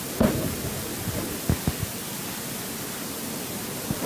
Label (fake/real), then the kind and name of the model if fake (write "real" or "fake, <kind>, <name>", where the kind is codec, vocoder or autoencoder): real